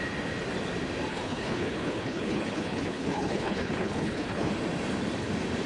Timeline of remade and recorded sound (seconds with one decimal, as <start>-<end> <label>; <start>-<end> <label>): 0.0-1.1 recorded; 1.1-4.5 remade; 4.5-5.7 recorded

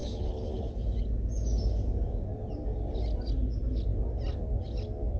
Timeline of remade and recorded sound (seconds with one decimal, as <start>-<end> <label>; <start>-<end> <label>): 0.0-0.7 remade; 0.7-5.2 recorded

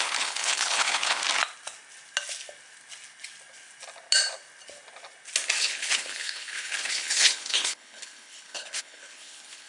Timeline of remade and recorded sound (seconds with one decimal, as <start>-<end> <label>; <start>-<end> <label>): 0.0-1.2 remade; 1.2-5.6 recorded; 5.6-9.7 remade

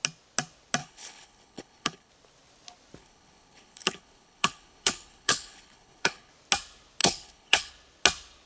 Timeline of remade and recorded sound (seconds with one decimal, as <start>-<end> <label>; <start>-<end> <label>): 0.0-0.8 recorded; 0.8-2.1 remade; 2.1-3.0 recorded; 3.0-6.3 remade; 6.3-7.0 recorded; 7.0-7.7 remade; 7.7-8.5 recorded

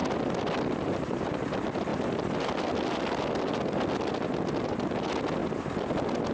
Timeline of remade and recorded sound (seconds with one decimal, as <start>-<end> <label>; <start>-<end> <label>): 0.0-6.3 recorded